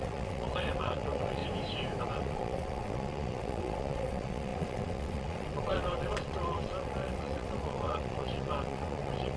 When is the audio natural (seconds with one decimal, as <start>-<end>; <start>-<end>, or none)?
1.4-2.0